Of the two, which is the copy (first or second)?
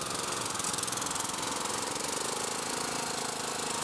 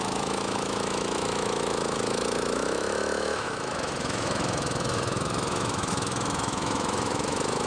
second